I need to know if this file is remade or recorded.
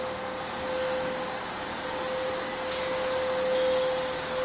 recorded